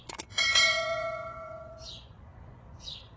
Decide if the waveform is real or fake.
fake